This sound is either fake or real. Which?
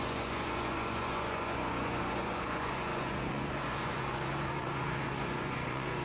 fake